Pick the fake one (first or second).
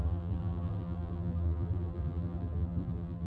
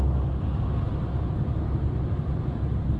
first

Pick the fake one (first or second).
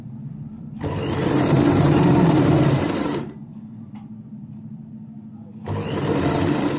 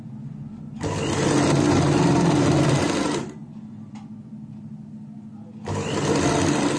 first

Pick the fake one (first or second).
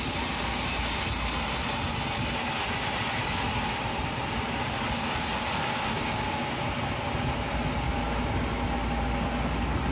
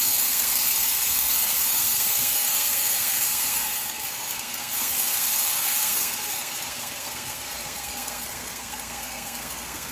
second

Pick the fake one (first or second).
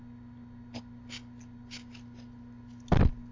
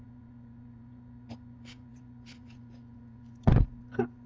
second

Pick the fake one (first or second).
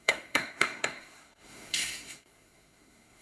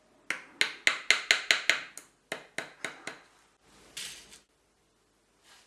first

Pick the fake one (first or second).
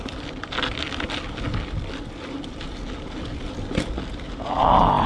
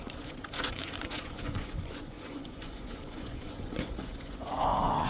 second